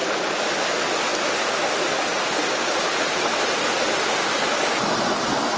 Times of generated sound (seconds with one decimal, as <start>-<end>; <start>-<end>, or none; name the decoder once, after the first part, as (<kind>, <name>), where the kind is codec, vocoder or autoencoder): 0.0-0.6 (vocoder, BigVGAN v2)